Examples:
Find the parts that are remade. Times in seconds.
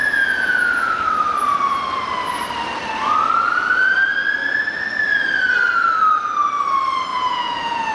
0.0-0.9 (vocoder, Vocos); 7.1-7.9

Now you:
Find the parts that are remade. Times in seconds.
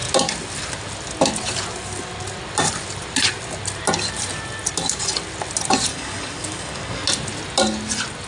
5.9-7.0 (codec, DAC)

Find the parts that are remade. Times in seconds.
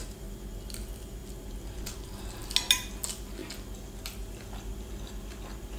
none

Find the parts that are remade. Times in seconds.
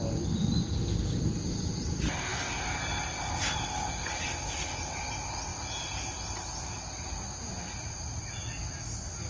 none